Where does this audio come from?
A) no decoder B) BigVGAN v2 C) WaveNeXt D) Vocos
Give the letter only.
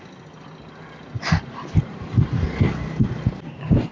A